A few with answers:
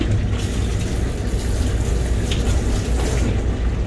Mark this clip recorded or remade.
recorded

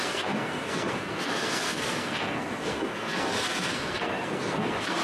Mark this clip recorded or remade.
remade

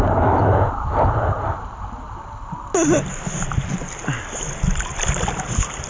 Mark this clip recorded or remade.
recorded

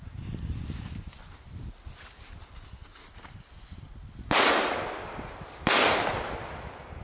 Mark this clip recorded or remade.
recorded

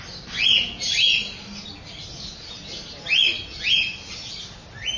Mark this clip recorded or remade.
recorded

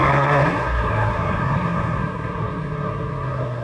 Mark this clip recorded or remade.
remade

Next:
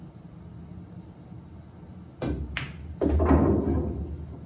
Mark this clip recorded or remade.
recorded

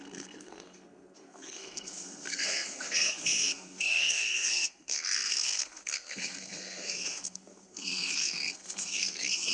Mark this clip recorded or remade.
remade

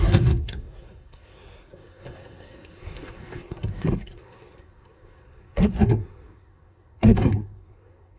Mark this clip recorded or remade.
remade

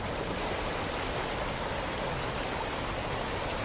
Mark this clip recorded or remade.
recorded